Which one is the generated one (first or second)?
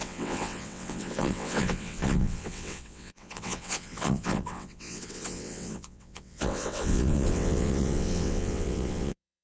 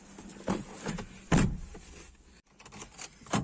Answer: first